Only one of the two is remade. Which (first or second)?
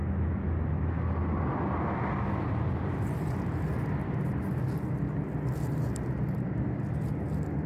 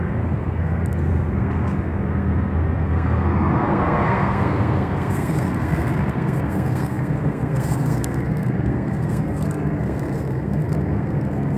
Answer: second